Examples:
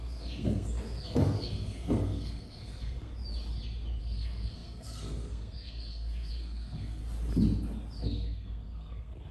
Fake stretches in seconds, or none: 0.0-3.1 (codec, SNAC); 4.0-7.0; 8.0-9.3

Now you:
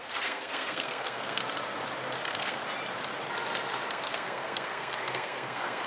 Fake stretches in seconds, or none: 0.0-1.4 (codec, SNAC); 2.2-2.6; 3.9-5.9

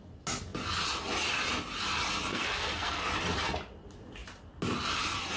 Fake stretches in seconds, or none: 2.3-3.1 (codec, SNAC)

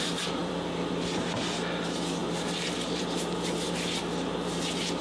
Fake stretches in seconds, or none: none